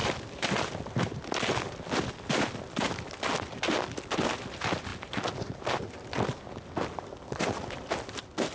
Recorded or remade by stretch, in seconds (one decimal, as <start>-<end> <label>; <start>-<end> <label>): 0.0-8.5 recorded